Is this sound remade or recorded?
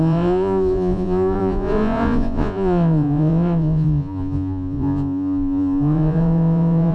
remade